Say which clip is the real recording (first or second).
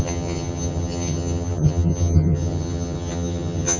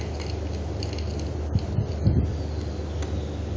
second